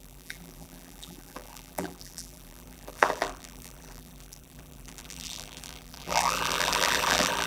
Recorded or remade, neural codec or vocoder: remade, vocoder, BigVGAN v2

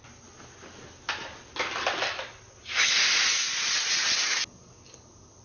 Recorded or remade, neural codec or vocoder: recorded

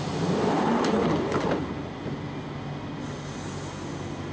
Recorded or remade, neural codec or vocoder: recorded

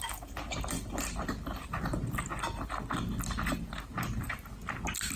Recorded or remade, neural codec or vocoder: recorded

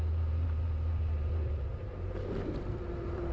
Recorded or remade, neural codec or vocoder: recorded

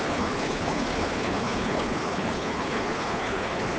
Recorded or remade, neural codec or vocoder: remade, codec, HILCodec